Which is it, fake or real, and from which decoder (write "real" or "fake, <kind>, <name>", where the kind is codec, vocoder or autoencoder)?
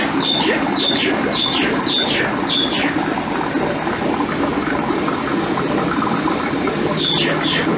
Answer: real